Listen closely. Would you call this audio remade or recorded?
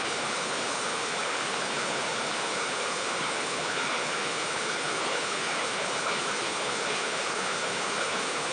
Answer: remade